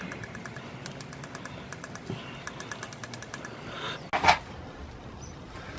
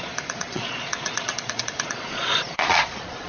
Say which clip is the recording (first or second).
first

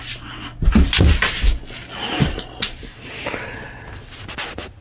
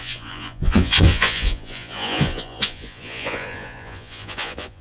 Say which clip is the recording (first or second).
first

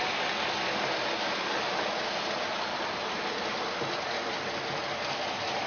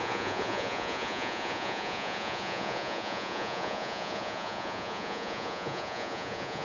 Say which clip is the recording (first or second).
first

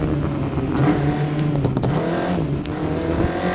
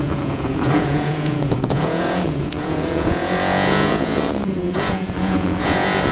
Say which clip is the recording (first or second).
first